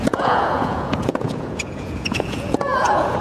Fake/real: fake